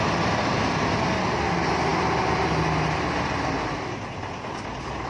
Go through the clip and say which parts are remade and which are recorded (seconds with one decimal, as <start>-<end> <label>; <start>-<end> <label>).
0.0-5.1 recorded

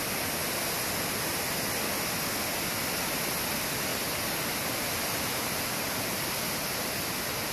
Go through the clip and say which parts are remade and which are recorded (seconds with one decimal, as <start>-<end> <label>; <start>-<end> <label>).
0.0-7.5 recorded